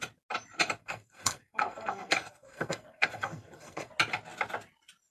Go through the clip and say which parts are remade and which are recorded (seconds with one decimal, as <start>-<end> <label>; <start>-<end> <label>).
0.0-0.8 recorded; 0.8-3.9 remade; 3.9-5.1 recorded